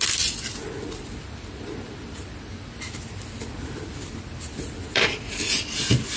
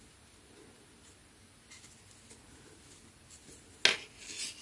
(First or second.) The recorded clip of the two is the second